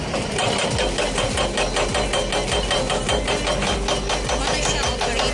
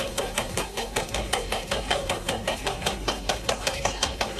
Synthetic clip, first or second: second